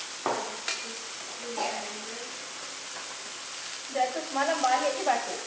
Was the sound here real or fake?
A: real